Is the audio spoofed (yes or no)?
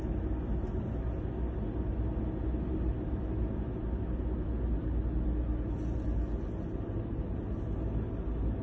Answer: no